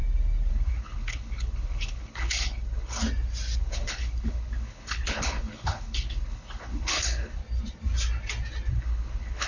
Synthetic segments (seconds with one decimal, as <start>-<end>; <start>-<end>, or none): 0.5-3.0; 3.6-7.4; 8.7-9.5